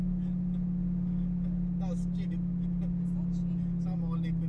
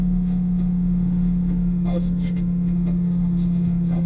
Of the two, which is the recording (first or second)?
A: first